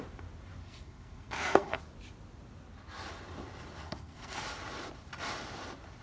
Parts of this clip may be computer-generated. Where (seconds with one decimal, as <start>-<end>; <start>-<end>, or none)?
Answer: 0.6-1.8; 3.8-4.4